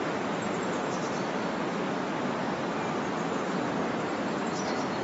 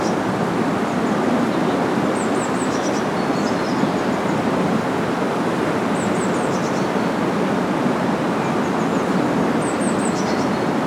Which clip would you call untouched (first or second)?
second